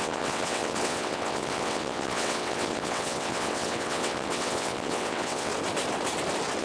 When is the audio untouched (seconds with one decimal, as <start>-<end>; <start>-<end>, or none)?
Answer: 5.5-6.6